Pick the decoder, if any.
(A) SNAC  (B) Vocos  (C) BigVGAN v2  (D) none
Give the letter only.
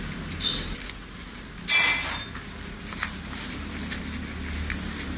D